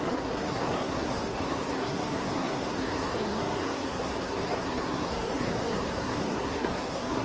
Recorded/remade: remade